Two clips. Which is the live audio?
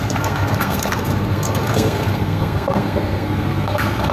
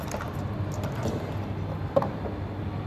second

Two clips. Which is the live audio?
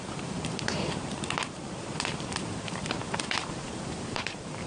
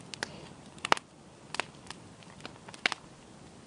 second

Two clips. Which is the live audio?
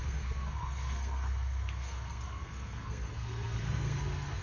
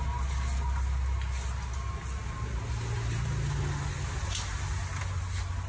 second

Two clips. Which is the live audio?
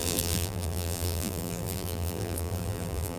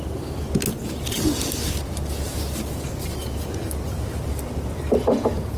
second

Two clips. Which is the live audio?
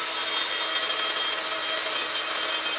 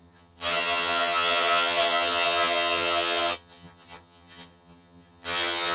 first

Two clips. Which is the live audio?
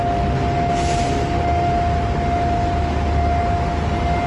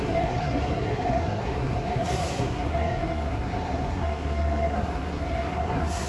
first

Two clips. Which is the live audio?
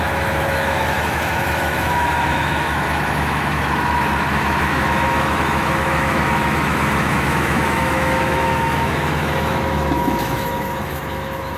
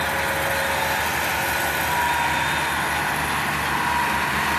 second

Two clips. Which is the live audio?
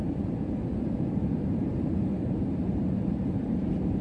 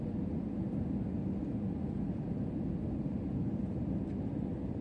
second